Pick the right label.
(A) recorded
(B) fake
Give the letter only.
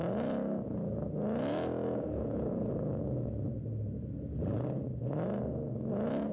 A